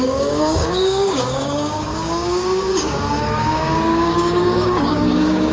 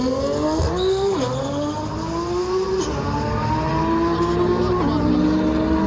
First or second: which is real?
second